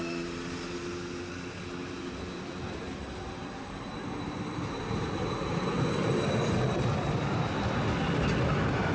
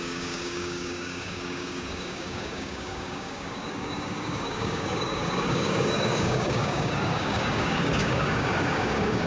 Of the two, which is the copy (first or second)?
second